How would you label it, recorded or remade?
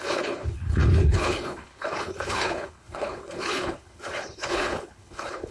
remade